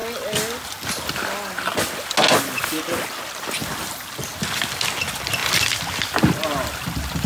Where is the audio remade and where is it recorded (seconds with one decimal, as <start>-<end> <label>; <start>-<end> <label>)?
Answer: 0.0-7.3 recorded